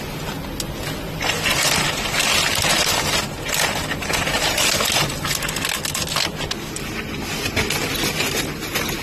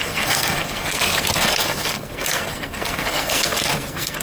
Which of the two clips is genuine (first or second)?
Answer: first